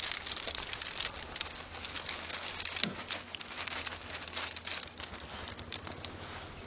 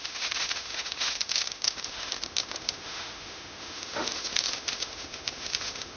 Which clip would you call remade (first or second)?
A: second